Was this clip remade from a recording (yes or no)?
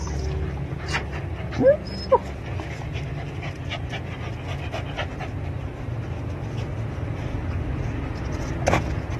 no